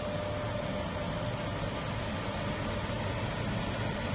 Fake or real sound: real